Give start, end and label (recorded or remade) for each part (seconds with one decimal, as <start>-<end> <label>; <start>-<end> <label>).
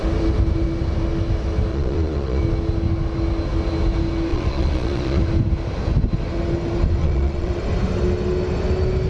0.0-1.7 recorded; 1.7-2.4 remade; 2.4-4.3 recorded; 4.3-5.2 remade; 5.2-7.0 recorded; 7.0-7.5 remade; 7.5-9.1 recorded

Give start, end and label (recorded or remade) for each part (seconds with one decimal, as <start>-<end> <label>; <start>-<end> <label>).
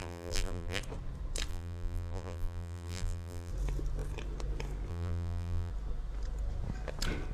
0.0-0.8 remade; 0.8-1.5 recorded; 1.5-3.5 remade; 3.5-4.9 recorded; 4.9-5.7 remade; 5.7-7.3 recorded